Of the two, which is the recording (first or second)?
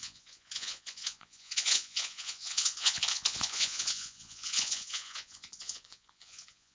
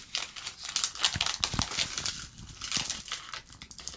second